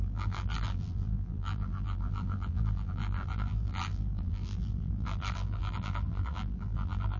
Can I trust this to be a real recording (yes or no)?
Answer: no